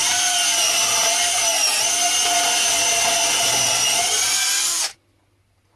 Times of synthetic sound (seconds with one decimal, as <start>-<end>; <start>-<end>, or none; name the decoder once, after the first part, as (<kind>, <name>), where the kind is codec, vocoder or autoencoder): none